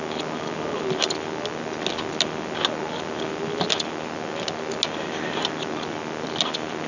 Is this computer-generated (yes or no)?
no